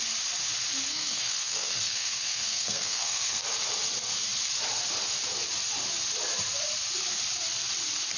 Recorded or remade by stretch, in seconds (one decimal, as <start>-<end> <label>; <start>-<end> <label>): 0.0-0.9 recorded; 0.9-3.4 remade; 3.4-8.2 recorded